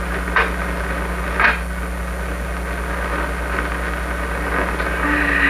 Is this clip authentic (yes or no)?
yes